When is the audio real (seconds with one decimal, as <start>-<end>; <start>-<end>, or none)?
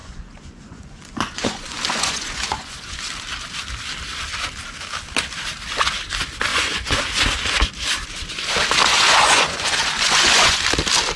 3.0-6.5; 7.0-8.8; 10.6-11.2